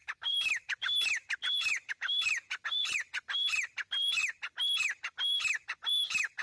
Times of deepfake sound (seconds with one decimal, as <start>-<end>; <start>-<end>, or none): 0.0-4.2; 4.8-6.4